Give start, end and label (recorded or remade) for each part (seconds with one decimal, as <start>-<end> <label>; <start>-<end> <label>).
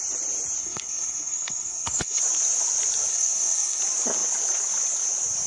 0.0-0.6 recorded; 0.6-2.2 remade; 2.2-3.1 recorded; 3.1-3.8 remade; 3.8-5.5 recorded